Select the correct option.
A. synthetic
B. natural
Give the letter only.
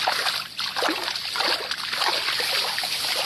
B